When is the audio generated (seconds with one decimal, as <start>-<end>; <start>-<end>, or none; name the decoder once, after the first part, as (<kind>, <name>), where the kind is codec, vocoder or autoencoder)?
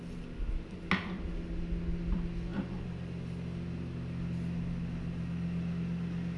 none